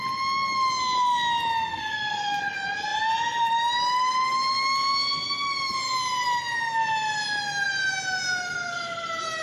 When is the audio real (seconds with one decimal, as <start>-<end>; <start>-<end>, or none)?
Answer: 0.0-1.7; 2.4-9.4